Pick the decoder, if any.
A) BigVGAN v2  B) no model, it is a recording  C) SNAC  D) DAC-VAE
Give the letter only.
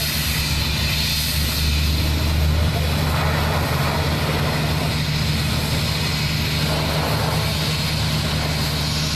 B